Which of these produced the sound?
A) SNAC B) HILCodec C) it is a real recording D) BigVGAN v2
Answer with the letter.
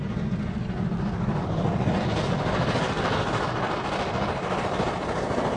C